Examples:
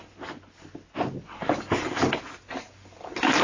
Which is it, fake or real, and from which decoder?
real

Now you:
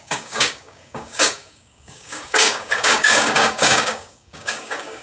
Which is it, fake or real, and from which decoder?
fake, codec, DAC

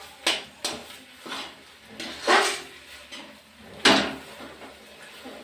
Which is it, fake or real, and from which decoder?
real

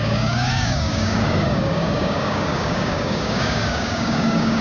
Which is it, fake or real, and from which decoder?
fake, codec, DAC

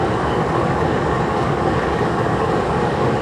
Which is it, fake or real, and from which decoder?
fake, codec, DAC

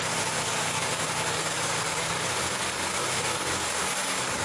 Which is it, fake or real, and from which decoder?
fake, codec, DAC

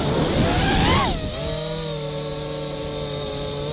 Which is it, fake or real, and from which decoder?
real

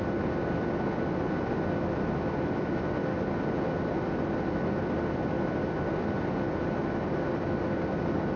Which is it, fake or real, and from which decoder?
real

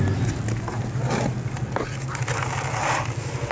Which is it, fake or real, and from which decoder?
real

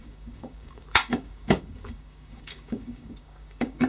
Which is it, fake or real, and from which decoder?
fake, codec, DAC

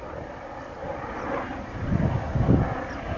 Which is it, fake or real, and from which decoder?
real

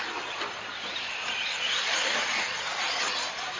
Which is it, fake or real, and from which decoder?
real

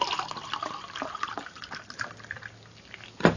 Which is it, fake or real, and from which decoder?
real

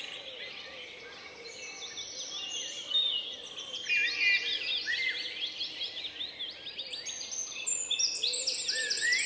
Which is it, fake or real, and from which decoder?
real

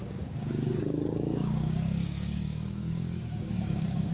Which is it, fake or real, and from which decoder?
fake, codec, DAC